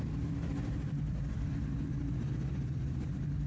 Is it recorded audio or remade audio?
remade